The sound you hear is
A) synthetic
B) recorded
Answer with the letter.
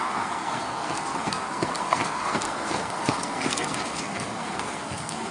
A